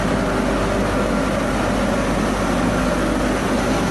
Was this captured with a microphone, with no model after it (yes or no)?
yes